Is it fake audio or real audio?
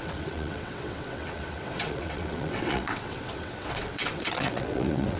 fake